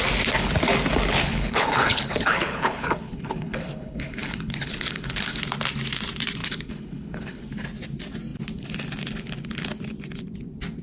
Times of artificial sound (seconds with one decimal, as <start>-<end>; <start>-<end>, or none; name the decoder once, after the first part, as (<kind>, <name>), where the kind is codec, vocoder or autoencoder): 1.2-5.4 (codec, HILCodec); 6.4-7.4